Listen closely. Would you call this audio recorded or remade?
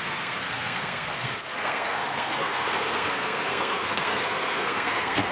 remade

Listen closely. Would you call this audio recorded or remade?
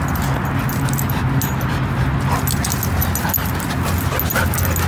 recorded